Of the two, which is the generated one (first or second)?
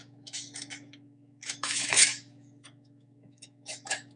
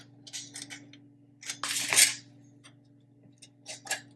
first